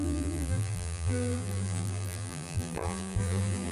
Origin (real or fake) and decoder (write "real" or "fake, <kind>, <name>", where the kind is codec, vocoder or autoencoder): fake, vocoder, BigVGAN v2